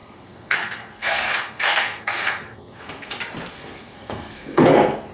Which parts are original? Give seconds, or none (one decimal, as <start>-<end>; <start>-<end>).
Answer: 3.1-3.5